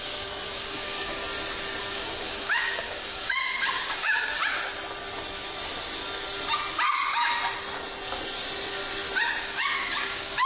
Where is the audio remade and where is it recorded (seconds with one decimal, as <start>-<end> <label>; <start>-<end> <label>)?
0.0-1.2 remade; 1.2-1.8 recorded; 1.8-4.4 remade; 4.4-9.4 recorded; 9.4-10.5 remade